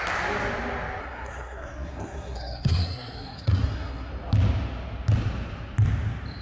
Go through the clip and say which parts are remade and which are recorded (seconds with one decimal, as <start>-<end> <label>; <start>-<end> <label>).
0.0-1.0 recorded; 1.0-4.1 remade; 4.1-6.4 recorded